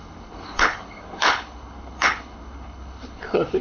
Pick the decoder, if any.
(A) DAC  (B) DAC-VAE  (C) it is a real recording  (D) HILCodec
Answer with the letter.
D